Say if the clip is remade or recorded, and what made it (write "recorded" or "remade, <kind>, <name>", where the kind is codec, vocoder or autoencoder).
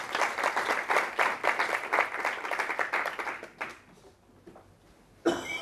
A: recorded